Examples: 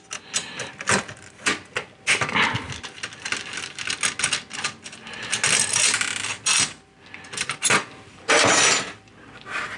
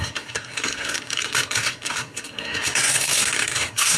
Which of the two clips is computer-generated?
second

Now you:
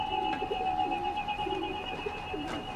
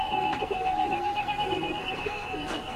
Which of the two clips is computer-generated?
second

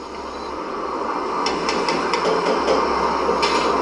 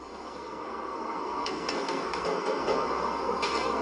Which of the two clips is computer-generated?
second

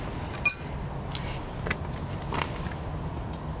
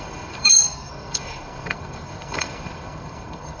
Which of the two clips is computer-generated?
second